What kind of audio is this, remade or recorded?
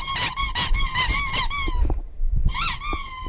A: recorded